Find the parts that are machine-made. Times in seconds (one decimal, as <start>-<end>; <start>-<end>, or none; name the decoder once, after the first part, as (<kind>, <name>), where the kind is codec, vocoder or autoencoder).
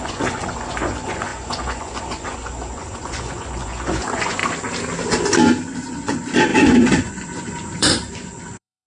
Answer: 0.0-4.4 (vocoder, Vocos); 5.9-8.9